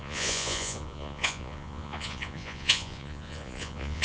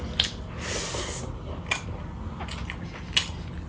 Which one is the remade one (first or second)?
first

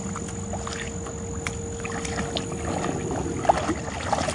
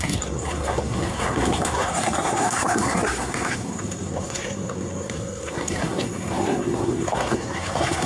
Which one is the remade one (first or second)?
second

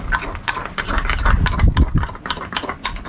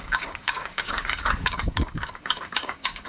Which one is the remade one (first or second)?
second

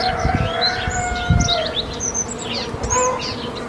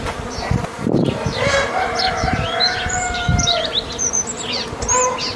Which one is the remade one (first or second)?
second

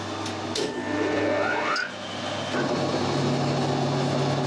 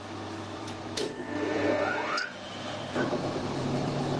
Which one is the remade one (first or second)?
second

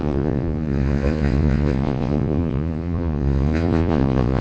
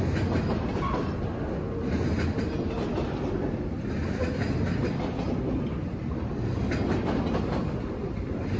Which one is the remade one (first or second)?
first